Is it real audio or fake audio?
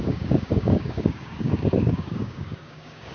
fake